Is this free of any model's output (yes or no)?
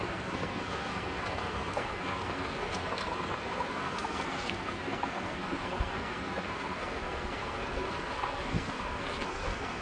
no